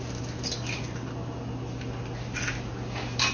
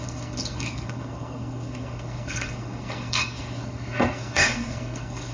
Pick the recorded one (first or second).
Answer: first